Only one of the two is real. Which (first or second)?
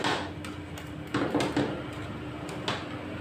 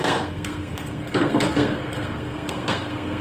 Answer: first